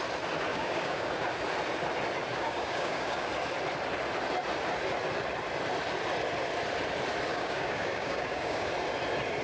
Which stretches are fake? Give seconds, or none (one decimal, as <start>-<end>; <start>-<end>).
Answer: 0.5-1.2; 2.3-3.3; 7.3-8.7